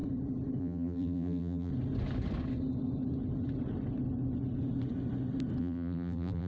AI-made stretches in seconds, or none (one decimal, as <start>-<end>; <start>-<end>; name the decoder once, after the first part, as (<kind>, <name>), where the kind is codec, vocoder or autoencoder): 0.6-1.7 (vocoder, BigVGAN v2); 5.6-6.5